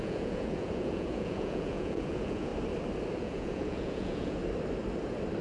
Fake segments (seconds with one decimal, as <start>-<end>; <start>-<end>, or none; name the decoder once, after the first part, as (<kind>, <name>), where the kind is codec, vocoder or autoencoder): 0.0-2.5 (vocoder, Vocos); 3.2-4.4